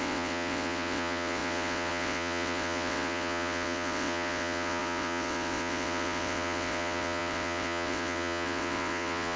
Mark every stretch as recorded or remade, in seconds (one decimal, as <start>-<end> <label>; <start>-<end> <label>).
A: 0.0-9.4 remade